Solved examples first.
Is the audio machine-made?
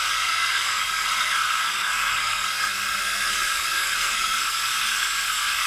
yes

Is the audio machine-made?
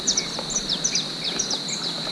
no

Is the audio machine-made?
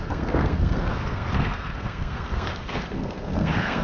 yes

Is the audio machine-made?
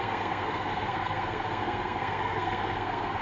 yes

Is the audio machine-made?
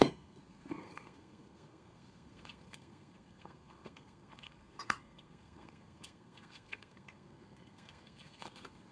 yes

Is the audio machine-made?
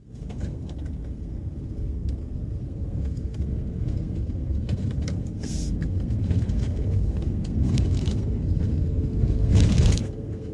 yes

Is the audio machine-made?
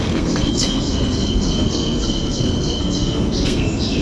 yes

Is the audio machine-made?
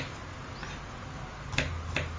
no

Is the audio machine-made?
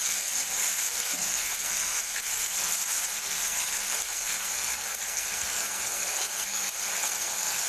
yes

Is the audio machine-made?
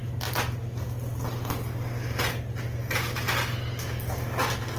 no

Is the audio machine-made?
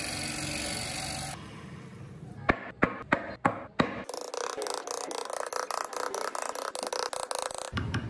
no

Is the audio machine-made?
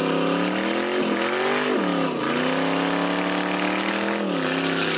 no